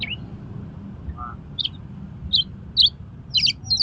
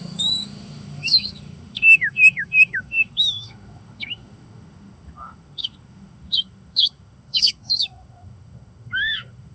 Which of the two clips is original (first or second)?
first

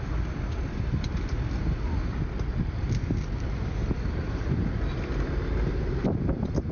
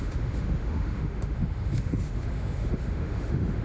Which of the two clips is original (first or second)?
first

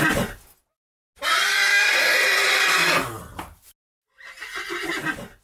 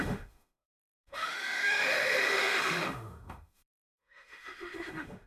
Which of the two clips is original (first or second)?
first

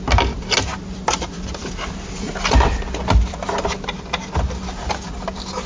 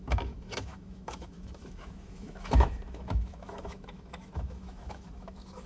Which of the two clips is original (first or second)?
first